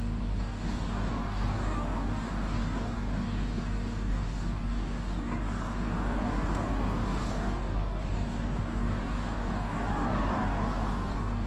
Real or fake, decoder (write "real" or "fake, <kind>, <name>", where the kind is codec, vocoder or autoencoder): fake, codec, DAC